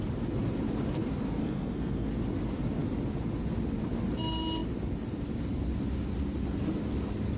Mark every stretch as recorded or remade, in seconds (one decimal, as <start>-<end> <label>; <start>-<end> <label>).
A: 0.0-1.4 recorded; 1.4-2.1 remade; 2.1-7.4 recorded